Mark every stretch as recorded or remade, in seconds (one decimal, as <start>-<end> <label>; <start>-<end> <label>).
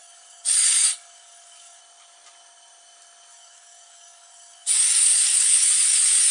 0.0-1.8 remade; 1.8-3.3 recorded; 3.3-5.7 remade; 5.7-6.3 recorded